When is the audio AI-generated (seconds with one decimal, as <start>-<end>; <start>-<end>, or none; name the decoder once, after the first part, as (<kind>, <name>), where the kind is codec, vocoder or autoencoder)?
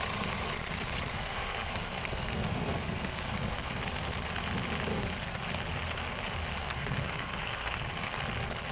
1.1-3.8 (codec, SNAC); 4.9-5.4; 6.6-8.1